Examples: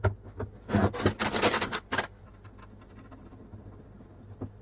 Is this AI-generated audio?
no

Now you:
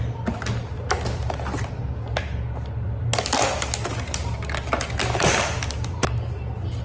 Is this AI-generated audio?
no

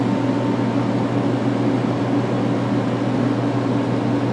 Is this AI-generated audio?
no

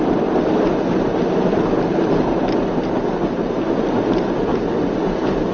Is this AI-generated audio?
no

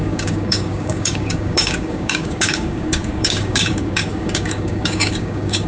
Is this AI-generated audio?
yes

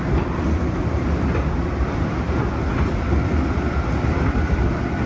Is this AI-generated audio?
no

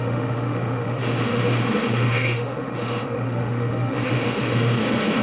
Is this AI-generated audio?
yes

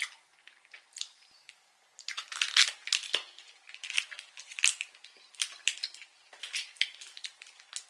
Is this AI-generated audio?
no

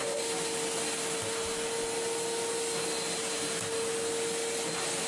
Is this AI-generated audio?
no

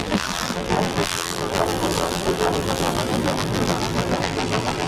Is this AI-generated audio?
yes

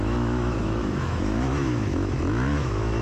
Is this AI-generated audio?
yes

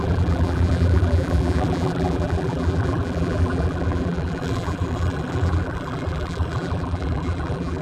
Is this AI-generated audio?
yes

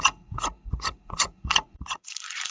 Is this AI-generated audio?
yes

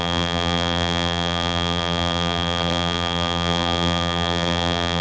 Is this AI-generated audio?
yes